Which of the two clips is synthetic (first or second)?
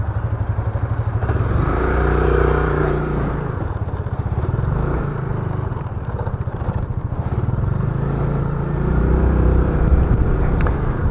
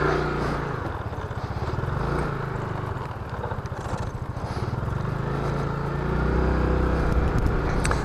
first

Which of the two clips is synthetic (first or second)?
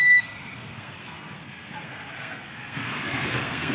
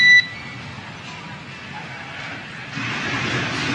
first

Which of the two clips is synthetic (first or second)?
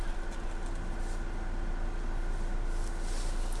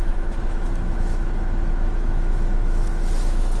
second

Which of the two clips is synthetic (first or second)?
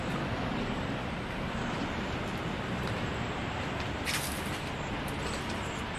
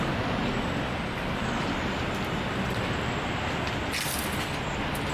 first